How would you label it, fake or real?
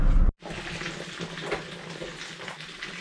real